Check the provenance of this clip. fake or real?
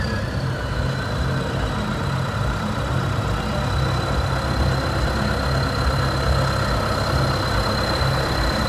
real